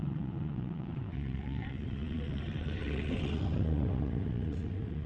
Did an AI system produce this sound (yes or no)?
yes